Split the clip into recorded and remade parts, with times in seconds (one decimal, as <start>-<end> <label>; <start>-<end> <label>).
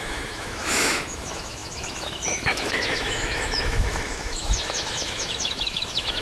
0.0-6.2 remade